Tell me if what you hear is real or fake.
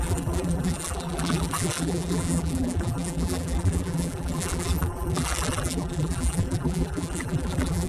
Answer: fake